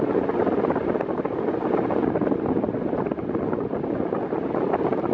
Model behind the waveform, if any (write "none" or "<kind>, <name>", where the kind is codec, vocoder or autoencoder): none